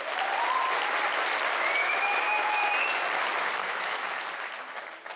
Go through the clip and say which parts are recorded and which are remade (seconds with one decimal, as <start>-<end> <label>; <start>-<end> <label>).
0.0-1.8 recorded; 1.8-2.7 remade; 2.7-3.6 recorded; 3.6-4.1 remade; 4.1-5.2 recorded

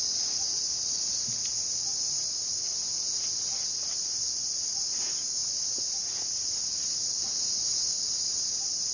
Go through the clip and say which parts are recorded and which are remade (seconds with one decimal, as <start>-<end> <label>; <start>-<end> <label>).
0.0-8.9 recorded

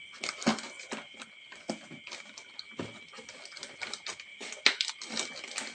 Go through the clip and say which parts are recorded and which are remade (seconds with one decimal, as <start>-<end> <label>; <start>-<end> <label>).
0.0-5.7 recorded

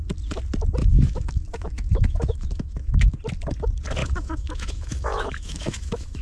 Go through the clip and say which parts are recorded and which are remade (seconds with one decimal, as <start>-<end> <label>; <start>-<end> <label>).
0.0-0.8 recorded; 0.8-3.2 remade; 3.2-4.0 recorded; 4.0-6.2 remade

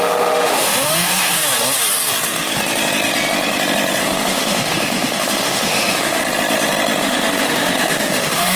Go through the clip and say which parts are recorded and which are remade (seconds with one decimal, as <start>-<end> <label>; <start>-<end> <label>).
0.0-1.4 remade; 1.4-4.0 recorded; 4.0-6.2 remade; 6.2-7.0 recorded; 7.0-8.6 remade

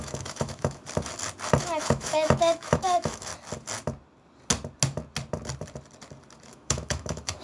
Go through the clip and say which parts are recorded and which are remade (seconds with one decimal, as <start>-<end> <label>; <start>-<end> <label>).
0.0-0.8 remade; 0.8-1.6 recorded; 1.6-3.3 remade; 3.3-6.5 recorded; 6.5-7.4 remade

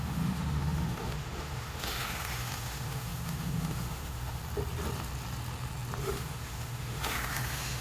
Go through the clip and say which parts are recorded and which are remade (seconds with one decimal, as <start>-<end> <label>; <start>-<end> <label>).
0.0-4.4 remade; 4.4-6.0 recorded; 6.0-7.8 remade

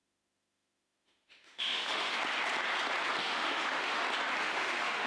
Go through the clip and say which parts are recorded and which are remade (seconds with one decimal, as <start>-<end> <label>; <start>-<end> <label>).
0.0-2.2 remade; 2.2-3.2 recorded; 3.2-4.0 remade; 4.0-4.4 recorded; 4.4-5.1 remade